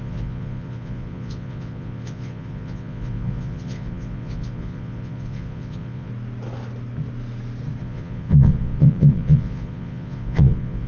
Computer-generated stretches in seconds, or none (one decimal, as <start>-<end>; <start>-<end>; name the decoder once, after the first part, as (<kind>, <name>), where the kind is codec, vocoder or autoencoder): 0.0-6.1 (vocoder, Vocos); 7.8-10.9